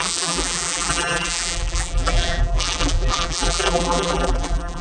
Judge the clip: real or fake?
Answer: fake